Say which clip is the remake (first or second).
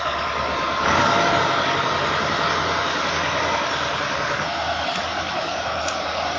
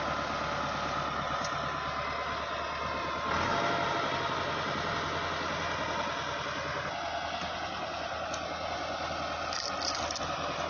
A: first